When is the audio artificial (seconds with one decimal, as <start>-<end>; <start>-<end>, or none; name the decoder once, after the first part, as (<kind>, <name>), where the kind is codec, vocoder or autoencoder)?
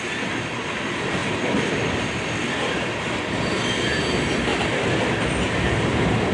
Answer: none